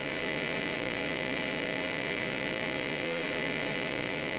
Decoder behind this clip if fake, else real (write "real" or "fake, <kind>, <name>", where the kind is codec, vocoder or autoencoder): fake, vocoder, Vocos